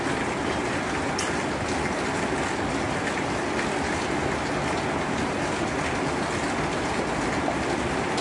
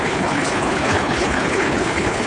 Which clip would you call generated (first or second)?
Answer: second